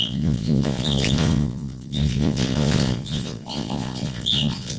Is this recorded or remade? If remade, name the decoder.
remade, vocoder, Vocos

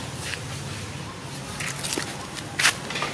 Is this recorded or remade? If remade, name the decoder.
recorded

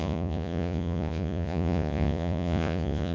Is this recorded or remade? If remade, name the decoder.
remade, vocoder, Vocos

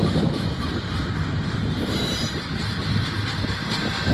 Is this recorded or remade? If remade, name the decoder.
recorded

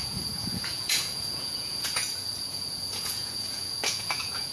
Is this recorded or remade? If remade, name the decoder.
remade, vocoder, Vocos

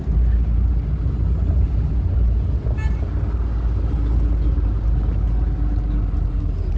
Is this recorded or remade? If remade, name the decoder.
recorded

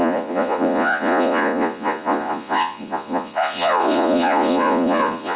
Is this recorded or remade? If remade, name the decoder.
remade, vocoder, Vocos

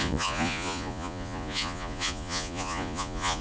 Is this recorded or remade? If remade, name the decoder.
remade, vocoder, Vocos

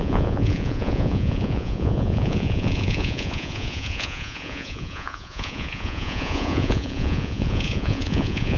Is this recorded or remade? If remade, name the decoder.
remade, vocoder, Vocos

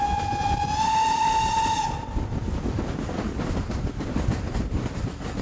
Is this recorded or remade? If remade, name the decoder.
recorded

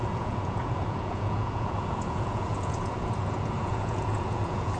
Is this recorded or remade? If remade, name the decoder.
remade, vocoder, Vocos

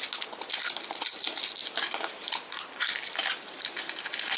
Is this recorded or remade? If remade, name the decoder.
recorded